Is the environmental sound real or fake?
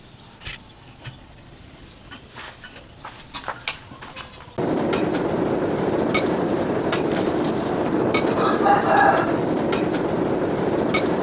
real